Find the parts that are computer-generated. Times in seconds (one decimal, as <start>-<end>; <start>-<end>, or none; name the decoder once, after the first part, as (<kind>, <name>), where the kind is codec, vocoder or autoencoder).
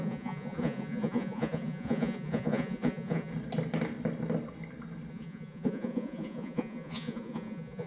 0.0-3.3 (vocoder, Vocos); 5.1-7.9